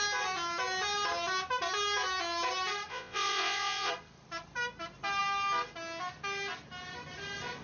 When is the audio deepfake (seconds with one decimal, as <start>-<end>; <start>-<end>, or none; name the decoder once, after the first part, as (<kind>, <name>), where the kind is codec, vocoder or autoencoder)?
2.9-3.9 (vocoder, Vocos)